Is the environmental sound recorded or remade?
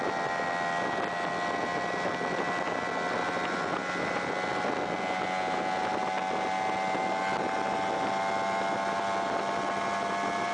recorded